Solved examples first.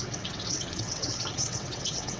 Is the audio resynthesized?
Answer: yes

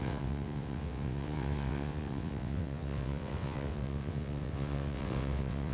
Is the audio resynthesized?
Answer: yes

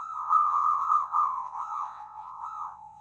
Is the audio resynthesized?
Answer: yes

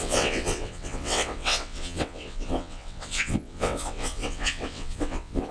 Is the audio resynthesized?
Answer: yes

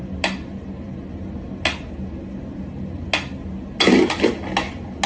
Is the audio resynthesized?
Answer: no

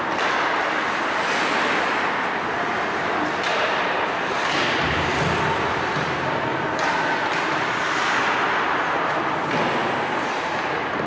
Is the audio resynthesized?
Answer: no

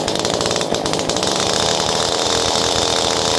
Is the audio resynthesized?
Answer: no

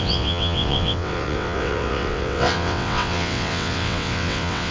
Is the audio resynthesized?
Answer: yes